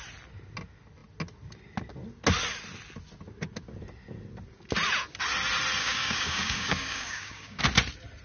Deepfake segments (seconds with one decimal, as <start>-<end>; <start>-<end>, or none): 5.8-7.6